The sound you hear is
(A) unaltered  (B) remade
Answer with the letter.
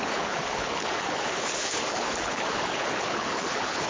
B